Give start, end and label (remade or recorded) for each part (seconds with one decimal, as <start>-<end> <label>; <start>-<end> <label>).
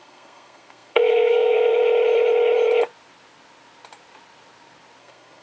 0.0-1.8 remade; 1.8-5.0 recorded; 5.0-5.4 remade